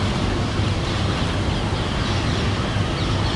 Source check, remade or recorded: recorded